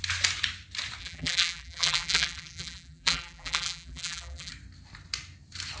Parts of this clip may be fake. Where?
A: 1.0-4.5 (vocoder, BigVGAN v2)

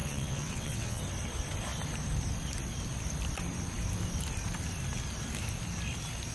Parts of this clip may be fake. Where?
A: 0.0-1.0 (vocoder, WaveNeXt)